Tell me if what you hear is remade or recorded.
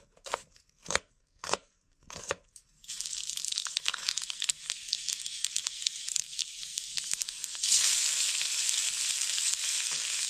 remade